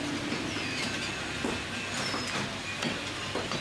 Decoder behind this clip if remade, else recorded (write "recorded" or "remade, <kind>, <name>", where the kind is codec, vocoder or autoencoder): recorded